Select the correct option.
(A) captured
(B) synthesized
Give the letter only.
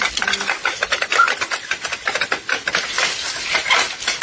A